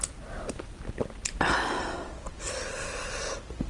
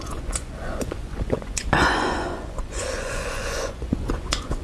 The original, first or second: first